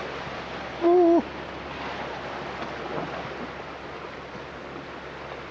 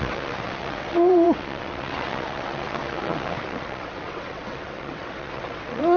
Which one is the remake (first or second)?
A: second